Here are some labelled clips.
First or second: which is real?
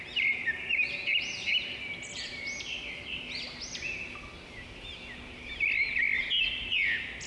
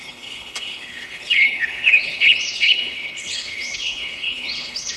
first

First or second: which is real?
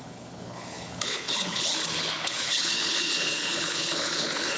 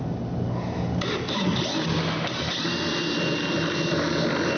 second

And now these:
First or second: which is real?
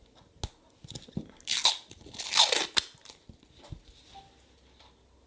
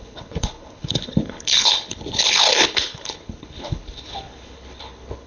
first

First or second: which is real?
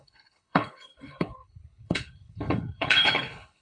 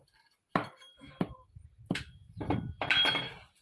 second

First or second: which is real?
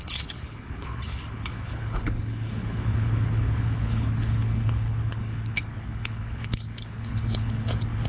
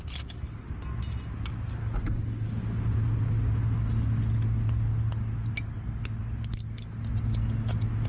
second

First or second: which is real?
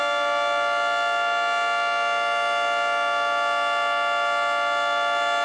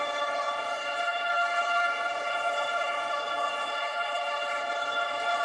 first